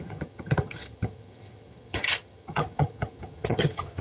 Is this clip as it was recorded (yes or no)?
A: no